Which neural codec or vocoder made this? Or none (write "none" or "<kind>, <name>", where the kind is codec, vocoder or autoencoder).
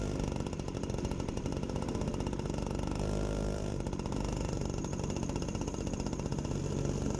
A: vocoder, BigVGAN v2